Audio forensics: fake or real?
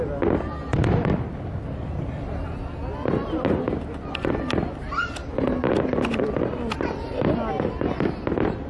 real